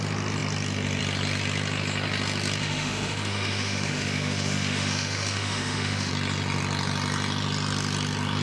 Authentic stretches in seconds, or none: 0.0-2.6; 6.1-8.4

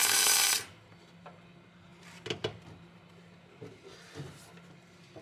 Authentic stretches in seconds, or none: 0.5-5.2

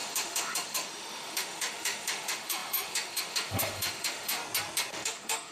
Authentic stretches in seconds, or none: 4.4-4.9

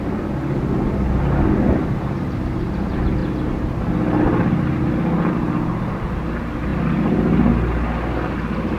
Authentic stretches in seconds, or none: 0.0-8.8

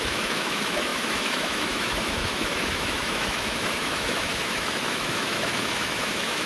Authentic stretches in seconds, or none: none